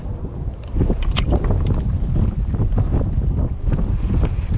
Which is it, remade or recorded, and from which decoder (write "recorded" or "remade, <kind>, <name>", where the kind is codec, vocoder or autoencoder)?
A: recorded